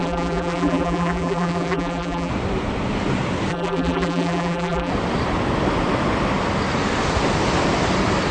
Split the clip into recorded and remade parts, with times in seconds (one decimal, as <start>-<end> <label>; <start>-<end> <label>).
0.0-2.3 remade; 2.3-3.5 recorded; 3.5-4.9 remade; 4.9-8.3 recorded